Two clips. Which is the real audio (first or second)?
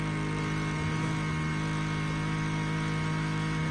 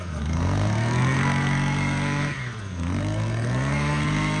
first